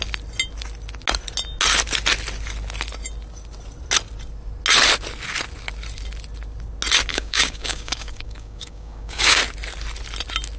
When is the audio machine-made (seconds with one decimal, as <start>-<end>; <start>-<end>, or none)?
7.1-9.4